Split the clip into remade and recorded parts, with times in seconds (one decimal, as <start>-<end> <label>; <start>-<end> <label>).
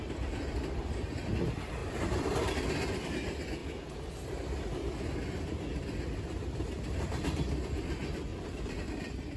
0.0-1.8 recorded; 1.8-2.5 remade; 2.5-8.3 recorded; 8.3-8.8 remade; 8.8-9.4 recorded